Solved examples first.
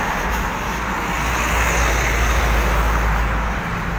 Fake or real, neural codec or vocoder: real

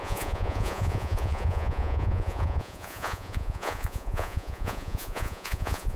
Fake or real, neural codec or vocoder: fake, vocoder, Vocos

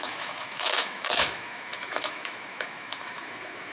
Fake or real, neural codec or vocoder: fake, autoencoder, DAC-VAE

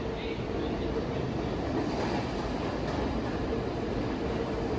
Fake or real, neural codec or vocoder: real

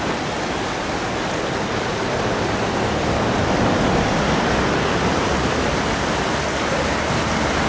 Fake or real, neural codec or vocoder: real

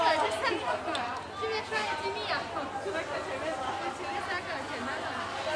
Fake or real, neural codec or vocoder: real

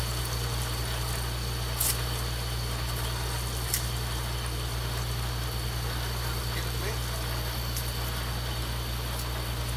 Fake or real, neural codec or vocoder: real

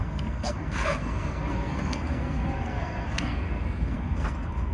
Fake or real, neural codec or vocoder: fake, codec, SNAC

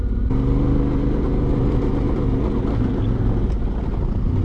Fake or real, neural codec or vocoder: real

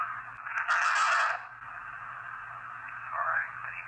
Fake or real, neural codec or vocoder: real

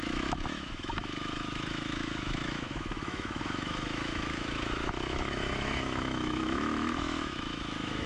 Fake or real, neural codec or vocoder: fake, autoencoder, DAC-VAE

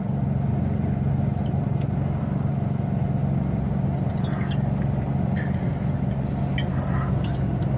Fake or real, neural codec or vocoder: real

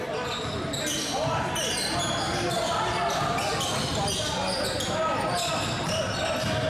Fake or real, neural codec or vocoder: real